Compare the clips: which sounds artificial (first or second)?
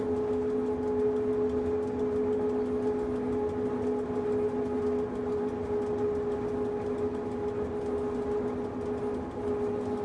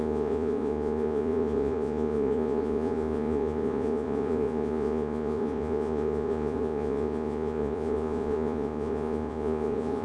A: second